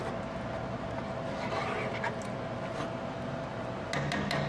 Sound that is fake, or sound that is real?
real